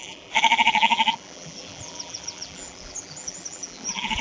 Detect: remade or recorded remade